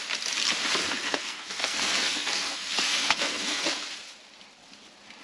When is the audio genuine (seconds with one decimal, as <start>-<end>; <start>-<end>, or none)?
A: 0.0-0.8; 3.9-5.2